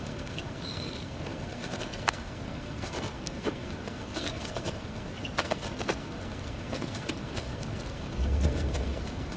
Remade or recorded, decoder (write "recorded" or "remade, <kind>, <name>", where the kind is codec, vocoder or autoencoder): remade, codec, SNAC